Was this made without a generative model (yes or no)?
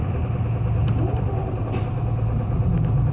yes